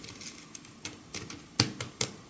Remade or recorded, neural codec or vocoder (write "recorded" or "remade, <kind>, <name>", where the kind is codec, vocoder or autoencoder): remade, vocoder, BigVGAN v2